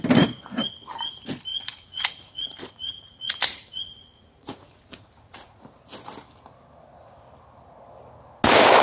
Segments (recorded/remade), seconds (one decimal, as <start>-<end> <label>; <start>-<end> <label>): 0.0-1.5 recorded; 1.5-5.6 remade; 5.6-8.8 recorded

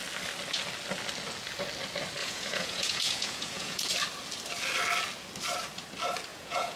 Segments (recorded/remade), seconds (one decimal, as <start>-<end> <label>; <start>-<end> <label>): 0.0-2.2 recorded; 2.2-3.9 remade; 3.9-6.3 recorded; 6.3-6.8 remade

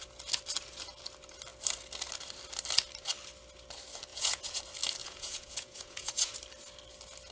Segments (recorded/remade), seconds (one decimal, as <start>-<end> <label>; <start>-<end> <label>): 0.0-4.1 recorded; 4.1-4.6 remade; 4.6-5.0 recorded; 5.0-6.3 remade; 6.3-7.3 recorded